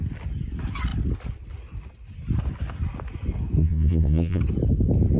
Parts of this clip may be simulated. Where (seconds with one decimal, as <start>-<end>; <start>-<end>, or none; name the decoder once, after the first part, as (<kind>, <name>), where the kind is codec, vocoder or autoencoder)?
3.6-4.4 (vocoder, Vocos)

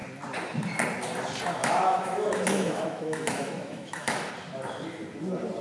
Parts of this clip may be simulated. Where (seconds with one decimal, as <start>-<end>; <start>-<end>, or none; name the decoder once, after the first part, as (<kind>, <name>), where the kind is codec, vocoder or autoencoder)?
1.6-4.3 (autoencoder, DAC-VAE)